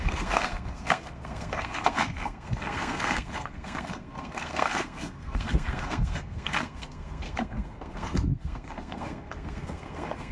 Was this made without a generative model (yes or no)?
no